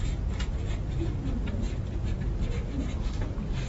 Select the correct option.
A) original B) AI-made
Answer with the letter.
A